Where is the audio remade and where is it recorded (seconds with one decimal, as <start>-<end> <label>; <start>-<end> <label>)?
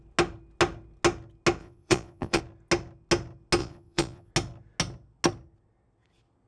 0.0-1.6 recorded; 1.6-2.4 remade; 2.4-3.6 recorded; 3.6-4.3 remade; 4.3-6.5 recorded